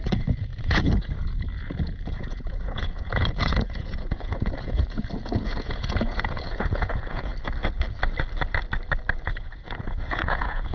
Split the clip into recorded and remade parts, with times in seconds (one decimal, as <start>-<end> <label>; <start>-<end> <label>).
0.0-7.3 remade; 7.3-9.2 recorded; 9.2-10.7 remade